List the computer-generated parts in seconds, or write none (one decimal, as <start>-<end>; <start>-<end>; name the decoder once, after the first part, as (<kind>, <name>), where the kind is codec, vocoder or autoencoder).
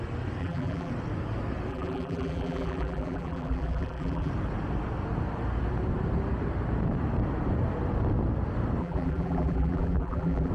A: 0.4-0.9 (vocoder, BigVGAN v2); 1.7-4.3; 8.8-10.5